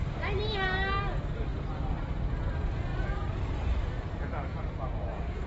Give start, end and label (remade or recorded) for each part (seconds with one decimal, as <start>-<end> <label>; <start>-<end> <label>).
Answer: 0.0-4.5 recorded; 4.5-5.5 remade